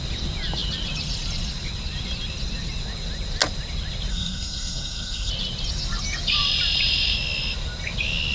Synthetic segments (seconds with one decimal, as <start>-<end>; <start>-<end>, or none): 4.1-5.3